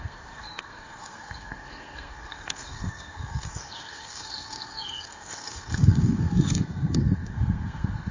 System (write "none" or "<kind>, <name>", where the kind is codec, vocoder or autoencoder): codec, SNAC